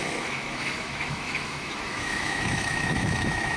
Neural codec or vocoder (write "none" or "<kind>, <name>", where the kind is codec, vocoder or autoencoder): autoencoder, DAC-VAE